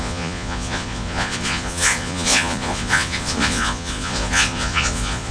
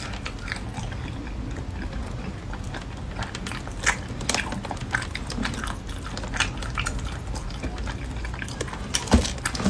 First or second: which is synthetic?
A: first